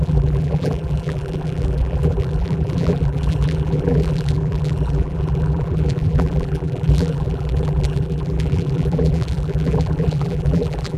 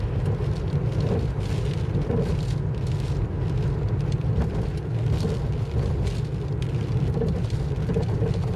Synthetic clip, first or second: first